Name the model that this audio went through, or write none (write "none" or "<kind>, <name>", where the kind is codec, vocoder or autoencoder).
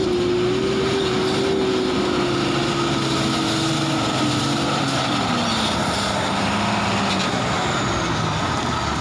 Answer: none